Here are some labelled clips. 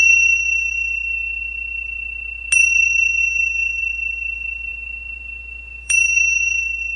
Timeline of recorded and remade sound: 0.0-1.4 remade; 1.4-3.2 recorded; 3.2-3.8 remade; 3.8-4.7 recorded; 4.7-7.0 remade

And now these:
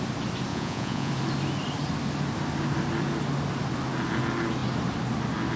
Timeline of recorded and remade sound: 0.0-0.5 recorded; 0.5-1.1 remade; 1.1-5.6 recorded

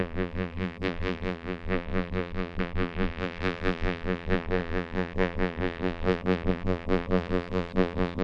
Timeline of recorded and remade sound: 0.0-8.2 remade